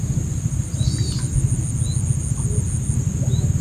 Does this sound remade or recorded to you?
recorded